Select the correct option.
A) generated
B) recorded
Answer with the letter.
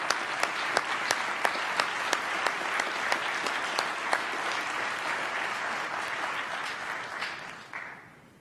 B